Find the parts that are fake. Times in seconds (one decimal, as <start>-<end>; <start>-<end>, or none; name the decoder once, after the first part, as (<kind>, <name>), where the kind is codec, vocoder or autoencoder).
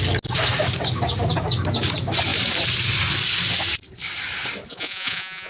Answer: 4.7-5.5 (vocoder, Vocos)